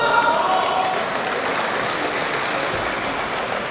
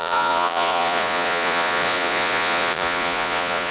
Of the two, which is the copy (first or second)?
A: second